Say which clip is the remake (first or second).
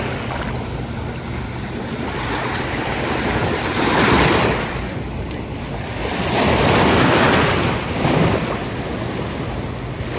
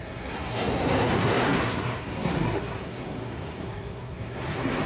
second